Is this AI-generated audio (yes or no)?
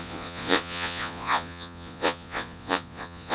yes